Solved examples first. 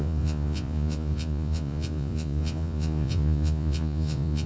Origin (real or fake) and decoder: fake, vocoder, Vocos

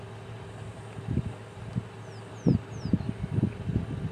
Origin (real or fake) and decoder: real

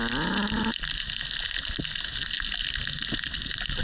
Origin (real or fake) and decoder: real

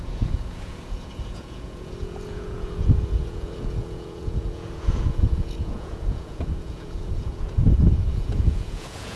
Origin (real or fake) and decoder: fake, vocoder, Vocos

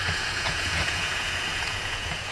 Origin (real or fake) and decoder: fake, vocoder, Vocos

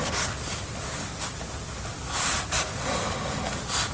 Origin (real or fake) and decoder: real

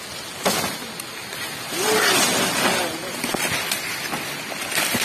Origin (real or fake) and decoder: real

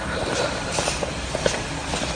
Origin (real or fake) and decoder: real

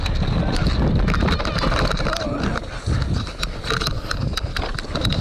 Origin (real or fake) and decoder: real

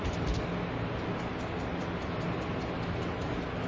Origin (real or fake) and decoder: real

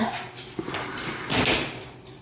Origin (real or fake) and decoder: real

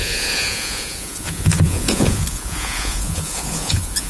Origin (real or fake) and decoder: fake, vocoder, Vocos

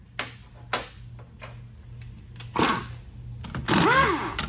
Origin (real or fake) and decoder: real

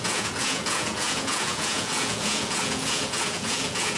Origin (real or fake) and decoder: fake, vocoder, Vocos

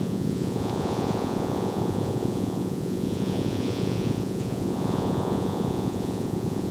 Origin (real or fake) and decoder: fake, vocoder, Vocos